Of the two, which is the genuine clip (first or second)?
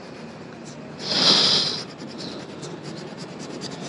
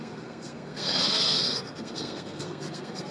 first